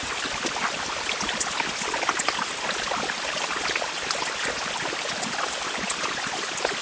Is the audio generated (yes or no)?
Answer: no